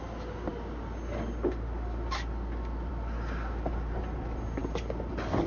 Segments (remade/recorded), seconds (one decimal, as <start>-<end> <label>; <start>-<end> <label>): 0.0-5.5 recorded